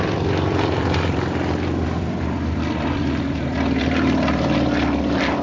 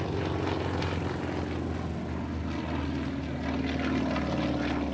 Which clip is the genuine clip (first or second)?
second